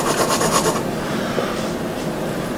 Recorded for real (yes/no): yes